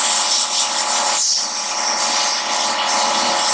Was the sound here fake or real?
real